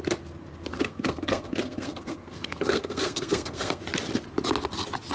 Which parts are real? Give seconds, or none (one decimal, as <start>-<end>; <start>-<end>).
0.0-0.7; 3.8-5.1